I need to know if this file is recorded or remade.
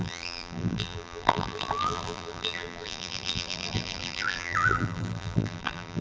remade